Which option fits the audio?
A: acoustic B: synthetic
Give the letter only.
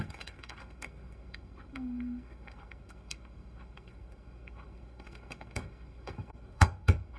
B